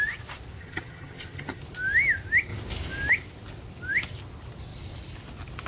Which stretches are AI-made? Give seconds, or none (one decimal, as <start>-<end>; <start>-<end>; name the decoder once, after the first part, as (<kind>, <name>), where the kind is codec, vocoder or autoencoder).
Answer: 0.6-1.6 (vocoder, HiFi-GAN)